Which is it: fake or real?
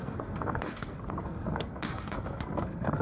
fake